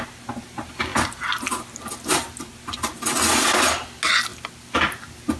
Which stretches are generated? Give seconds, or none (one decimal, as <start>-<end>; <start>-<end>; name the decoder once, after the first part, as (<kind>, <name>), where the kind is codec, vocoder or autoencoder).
none